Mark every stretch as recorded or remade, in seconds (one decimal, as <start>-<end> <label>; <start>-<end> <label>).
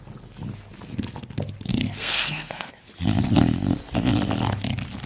0.0-1.7 recorded; 1.7-2.7 remade; 2.7-5.1 recorded